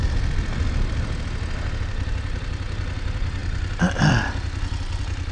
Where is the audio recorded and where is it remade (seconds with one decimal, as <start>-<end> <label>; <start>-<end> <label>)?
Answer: 0.0-5.3 recorded